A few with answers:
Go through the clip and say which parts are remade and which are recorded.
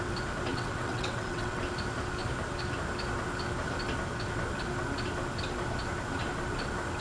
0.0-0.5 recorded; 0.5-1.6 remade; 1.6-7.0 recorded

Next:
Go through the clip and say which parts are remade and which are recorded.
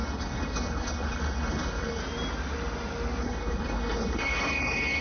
0.0-2.0 remade; 2.0-3.2 recorded; 3.2-5.0 remade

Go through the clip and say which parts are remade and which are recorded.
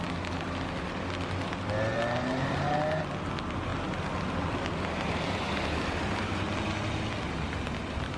0.0-8.2 recorded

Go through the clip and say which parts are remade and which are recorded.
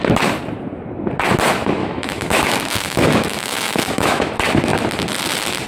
0.0-1.8 recorded; 1.8-4.3 remade; 4.3-5.7 recorded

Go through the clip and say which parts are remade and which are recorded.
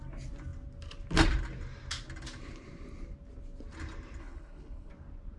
0.0-4.2 recorded; 4.2-4.9 remade; 4.9-5.4 recorded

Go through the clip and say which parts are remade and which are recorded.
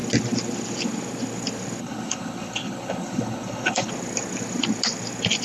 0.0-1.8 recorded; 1.8-3.9 remade; 3.9-5.4 recorded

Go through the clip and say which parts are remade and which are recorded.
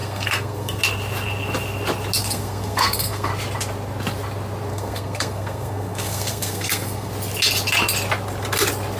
0.0-0.8 remade; 0.8-2.2 recorded; 2.2-3.3 remade; 3.3-4.7 recorded; 4.7-7.1 remade; 7.1-9.0 recorded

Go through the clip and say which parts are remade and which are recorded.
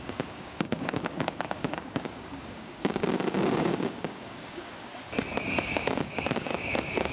0.0-4.9 remade; 4.9-5.6 recorded; 5.6-7.1 remade